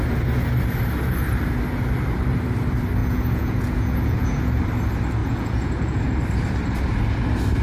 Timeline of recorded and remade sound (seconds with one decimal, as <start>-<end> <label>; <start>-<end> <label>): 0.0-3.0 recorded; 3.0-4.6 remade; 4.6-5.2 recorded; 5.2-6.0 remade; 6.0-7.6 recorded